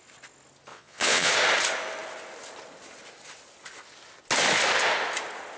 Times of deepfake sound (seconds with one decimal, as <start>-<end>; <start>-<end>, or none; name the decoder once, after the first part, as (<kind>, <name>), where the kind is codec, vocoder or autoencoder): 0.7-1.3 (vocoder, Vocos)